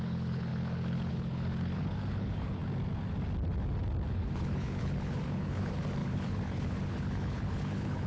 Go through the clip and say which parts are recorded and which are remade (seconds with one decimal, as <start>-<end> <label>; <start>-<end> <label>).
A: 0.0-2.6 remade; 2.6-4.1 recorded; 4.1-8.1 remade